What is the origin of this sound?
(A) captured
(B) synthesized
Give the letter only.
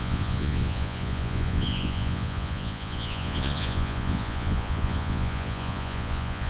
B